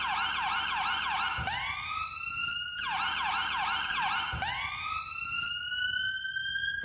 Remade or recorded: recorded